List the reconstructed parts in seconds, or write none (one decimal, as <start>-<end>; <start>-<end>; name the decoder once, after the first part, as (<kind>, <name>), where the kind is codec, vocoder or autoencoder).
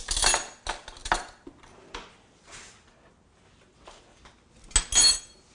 none